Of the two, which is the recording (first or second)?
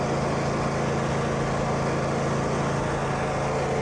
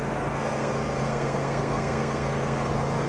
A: first